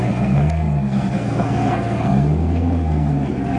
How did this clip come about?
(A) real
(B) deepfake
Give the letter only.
B